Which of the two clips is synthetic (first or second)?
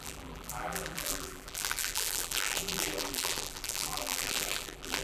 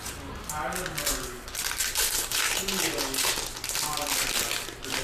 first